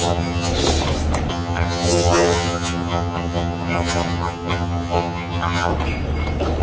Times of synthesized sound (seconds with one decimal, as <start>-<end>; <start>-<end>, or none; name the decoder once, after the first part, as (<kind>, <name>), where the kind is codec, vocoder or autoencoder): 0.0-0.5 (vocoder, HiFi-GAN); 1.3-5.7